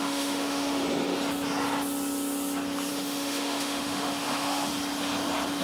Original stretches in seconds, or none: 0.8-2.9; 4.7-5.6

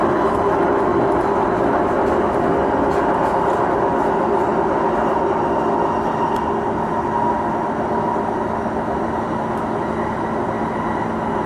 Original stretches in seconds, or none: 0.0-11.5

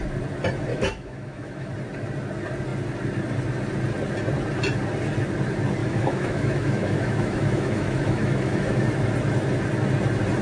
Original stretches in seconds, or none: 0.0-0.7; 1.7-5.8; 8.9-10.4

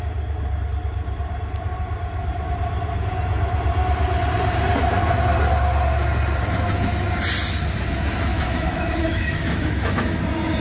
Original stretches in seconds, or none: 0.0-8.3; 10.2-10.6

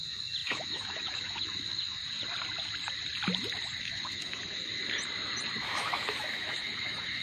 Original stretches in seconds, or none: 2.0-3.8; 4.7-5.6

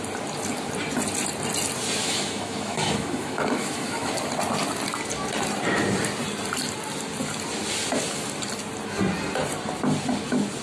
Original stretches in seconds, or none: 0.0-2.0; 4.1-10.6

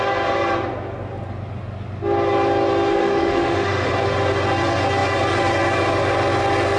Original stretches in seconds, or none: 0.0-2.9; 3.9-6.8

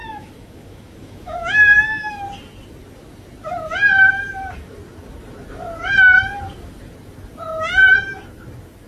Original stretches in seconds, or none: 2.2-8.9